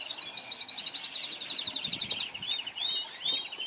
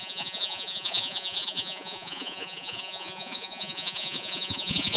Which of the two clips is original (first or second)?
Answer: first